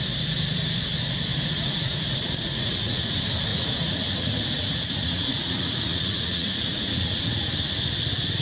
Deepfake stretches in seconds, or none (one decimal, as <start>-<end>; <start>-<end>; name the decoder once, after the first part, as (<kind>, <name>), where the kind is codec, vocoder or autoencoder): 1.3-3.1 (vocoder, Vocos); 3.5-7.2